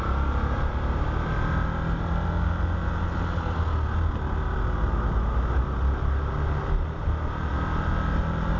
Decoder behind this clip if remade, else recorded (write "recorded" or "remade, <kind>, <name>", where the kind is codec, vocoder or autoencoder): recorded